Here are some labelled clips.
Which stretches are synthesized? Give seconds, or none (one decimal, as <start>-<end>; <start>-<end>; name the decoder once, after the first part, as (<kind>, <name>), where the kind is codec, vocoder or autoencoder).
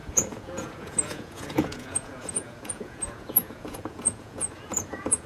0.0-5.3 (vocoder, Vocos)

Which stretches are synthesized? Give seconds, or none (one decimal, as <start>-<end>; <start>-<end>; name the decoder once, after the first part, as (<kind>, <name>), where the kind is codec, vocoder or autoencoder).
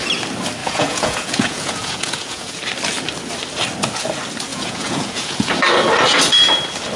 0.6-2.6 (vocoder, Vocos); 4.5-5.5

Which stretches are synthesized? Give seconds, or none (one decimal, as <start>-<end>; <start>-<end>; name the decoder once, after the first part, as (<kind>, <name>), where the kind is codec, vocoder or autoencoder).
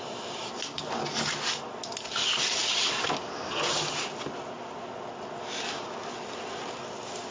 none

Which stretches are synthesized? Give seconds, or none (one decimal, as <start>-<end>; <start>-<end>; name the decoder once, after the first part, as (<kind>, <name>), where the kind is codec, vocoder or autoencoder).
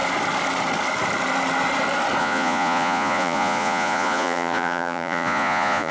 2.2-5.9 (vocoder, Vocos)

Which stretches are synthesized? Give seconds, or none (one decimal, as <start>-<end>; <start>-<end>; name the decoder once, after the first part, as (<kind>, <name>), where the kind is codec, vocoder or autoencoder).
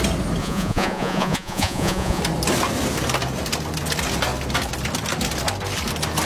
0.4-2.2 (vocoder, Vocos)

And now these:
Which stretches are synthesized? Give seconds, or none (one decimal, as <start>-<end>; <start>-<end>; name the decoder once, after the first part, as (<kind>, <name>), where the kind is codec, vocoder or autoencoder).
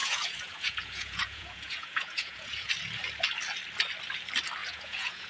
0.0-2.7 (vocoder, Vocos); 4.6-5.3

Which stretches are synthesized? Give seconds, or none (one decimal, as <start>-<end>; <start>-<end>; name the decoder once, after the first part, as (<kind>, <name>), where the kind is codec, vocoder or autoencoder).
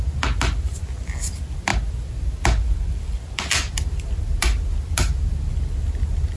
none